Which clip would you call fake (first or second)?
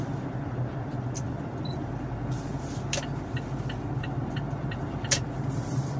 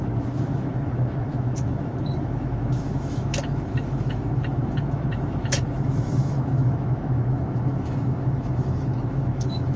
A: second